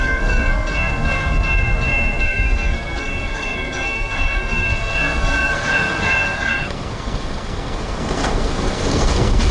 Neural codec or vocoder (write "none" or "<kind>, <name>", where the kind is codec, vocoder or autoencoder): codec, SNAC